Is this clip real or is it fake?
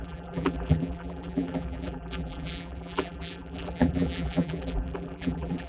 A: fake